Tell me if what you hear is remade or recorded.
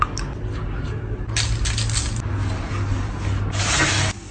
recorded